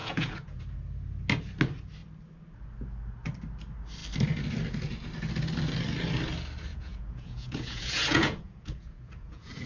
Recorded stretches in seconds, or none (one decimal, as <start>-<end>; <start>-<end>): 0.6-6.7